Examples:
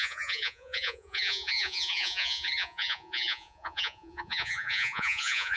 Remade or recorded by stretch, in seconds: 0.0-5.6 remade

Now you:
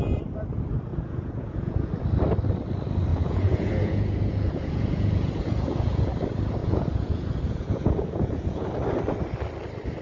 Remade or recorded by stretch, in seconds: 0.0-0.9 recorded; 0.9-1.9 remade; 1.9-3.1 recorded; 3.1-6.1 remade; 6.1-6.6 recorded; 6.6-8.7 remade; 8.7-10.0 recorded

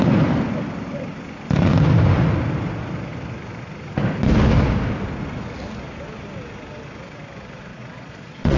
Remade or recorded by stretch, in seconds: 0.0-7.7 recorded; 7.7-8.6 remade

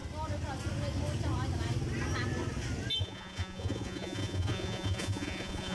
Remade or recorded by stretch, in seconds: 0.0-3.0 recorded; 3.0-5.7 remade

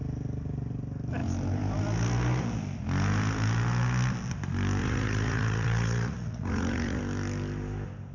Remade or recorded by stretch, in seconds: 0.0-4.8 recorded; 4.8-7.0 remade; 7.0-8.1 recorded

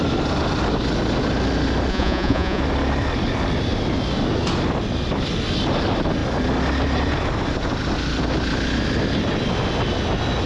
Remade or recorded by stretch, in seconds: 0.0-1.9 recorded; 1.9-2.6 remade; 2.6-10.5 recorded